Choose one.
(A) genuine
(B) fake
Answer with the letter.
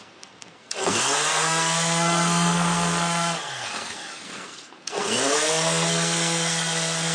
B